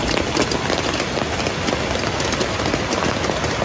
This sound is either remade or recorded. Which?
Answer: recorded